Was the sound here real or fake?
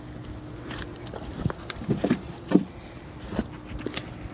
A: real